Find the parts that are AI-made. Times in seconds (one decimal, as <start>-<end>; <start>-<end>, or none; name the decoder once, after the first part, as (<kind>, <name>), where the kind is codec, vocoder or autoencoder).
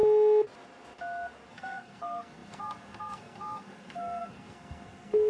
1.5-5.3 (codec, SNAC)